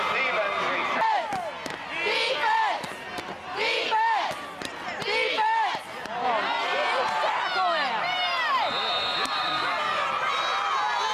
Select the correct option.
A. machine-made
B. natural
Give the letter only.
B